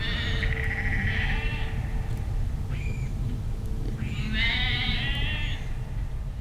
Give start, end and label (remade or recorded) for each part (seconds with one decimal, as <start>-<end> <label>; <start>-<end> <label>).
0.0-6.4 recorded